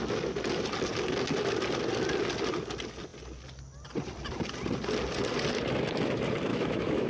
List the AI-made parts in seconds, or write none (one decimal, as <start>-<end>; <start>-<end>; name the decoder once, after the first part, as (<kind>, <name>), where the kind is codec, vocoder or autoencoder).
6.5-7.1 (autoencoder, DAC-VAE)